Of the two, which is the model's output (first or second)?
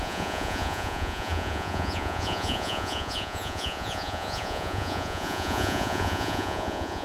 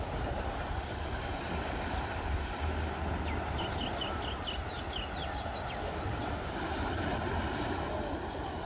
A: first